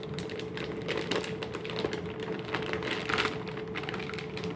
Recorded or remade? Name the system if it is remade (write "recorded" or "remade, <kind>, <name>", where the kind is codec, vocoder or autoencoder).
recorded